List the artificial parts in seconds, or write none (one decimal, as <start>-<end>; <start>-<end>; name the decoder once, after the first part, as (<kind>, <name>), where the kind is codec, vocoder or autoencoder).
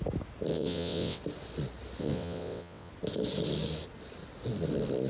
0.5-1.2 (vocoder, WaveNeXt); 2.0-2.9